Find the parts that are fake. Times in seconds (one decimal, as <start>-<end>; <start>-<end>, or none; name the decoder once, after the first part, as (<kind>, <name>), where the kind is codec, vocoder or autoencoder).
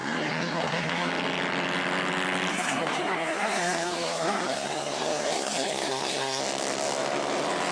0.0-1.1 (codec, SNAC); 2.5-6.4